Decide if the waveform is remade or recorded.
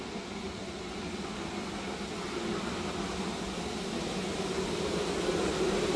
recorded